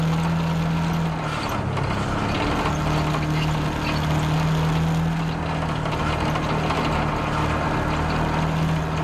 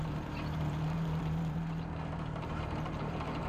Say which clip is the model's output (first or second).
second